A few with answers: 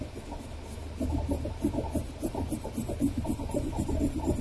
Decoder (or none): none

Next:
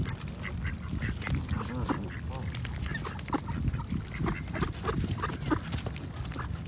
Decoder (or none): none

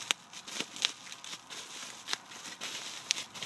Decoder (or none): none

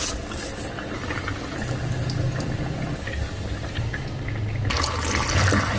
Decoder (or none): none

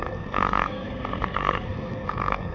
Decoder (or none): codec, SNAC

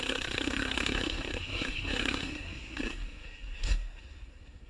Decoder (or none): codec, SNAC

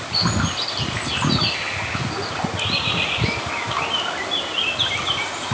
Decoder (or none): none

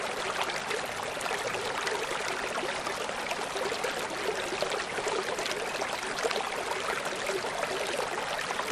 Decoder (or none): none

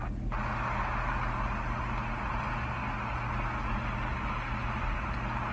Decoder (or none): none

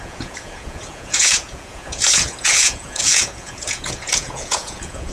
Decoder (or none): vocoder, Vocos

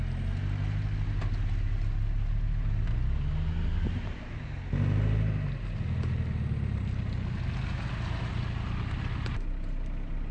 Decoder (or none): none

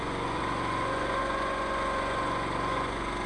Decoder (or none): vocoder, Vocos